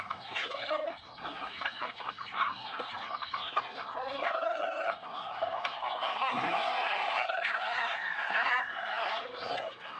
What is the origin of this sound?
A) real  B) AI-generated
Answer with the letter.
B